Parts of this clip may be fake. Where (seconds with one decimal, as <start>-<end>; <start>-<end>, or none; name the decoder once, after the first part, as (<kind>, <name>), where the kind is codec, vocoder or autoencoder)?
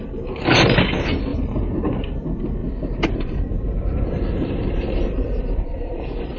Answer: 1.3-1.8 (vocoder, BigVGAN v2); 2.6-6.0